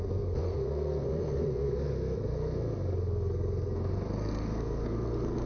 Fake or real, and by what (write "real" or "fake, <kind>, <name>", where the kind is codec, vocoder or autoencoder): fake, codec, SNAC